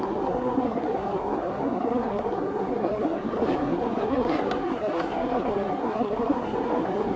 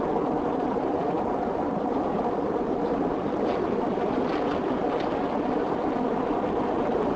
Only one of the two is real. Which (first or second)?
second